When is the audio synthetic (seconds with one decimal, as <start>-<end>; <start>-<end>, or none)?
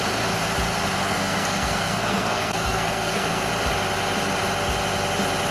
1.0-3.5